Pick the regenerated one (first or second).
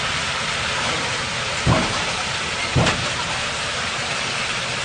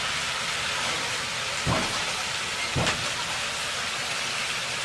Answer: first